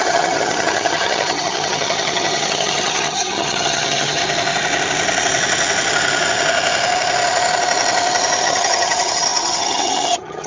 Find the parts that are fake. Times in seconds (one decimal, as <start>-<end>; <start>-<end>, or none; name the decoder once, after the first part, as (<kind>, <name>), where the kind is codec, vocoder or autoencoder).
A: 0.0-4.2 (vocoder, HiFi-GAN); 8.4-10.5